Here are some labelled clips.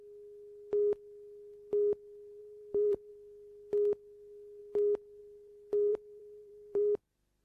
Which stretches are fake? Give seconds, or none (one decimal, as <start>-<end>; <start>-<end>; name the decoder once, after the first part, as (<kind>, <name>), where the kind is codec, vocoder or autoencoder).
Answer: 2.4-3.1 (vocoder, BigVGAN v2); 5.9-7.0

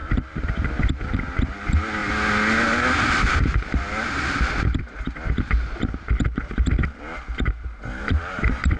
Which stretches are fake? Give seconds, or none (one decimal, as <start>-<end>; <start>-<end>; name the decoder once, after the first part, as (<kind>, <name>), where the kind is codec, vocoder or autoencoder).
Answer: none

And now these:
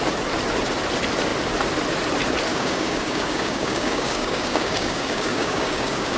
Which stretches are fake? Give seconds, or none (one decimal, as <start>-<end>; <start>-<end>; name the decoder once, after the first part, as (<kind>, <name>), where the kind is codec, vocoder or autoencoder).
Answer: 2.5-6.2 (codec, DAC)

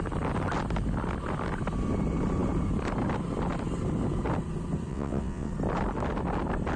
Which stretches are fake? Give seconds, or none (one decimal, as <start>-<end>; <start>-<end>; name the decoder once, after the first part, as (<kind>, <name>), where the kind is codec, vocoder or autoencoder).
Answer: 4.9-5.5 (vocoder, WaveNeXt)

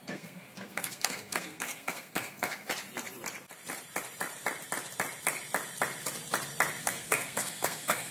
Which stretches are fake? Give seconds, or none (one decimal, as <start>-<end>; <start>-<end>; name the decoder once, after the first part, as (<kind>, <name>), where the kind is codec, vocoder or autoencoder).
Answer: 0.0-2.7 (codec, SNAC); 6.8-8.1

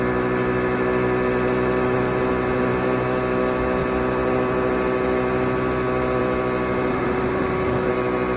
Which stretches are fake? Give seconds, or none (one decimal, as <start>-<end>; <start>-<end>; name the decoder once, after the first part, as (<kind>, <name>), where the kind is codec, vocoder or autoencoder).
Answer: 6.9-7.9 (autoencoder, DAC-VAE)

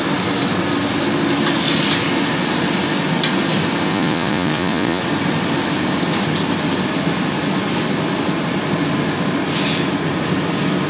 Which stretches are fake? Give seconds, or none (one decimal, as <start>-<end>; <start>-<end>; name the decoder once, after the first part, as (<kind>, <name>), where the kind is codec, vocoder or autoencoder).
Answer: 3.9-5.0 (vocoder, Vocos)